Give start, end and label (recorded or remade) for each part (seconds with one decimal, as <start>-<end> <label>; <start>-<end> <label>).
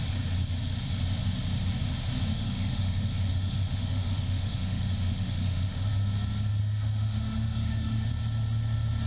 0.0-2.3 recorded; 2.3-5.9 remade; 5.9-6.6 recorded; 6.6-8.1 remade; 8.1-9.1 recorded